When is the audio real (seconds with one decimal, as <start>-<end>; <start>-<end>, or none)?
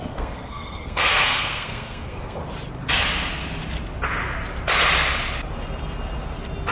2.4-6.7